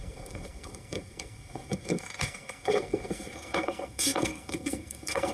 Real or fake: fake